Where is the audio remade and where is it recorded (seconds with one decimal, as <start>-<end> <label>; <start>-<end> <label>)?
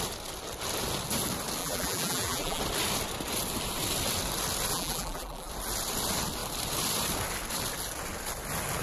0.0-1.6 recorded; 1.6-2.6 remade; 2.6-4.7 recorded; 4.7-5.5 remade; 5.5-8.8 recorded